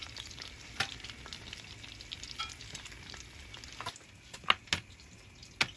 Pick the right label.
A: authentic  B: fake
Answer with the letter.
A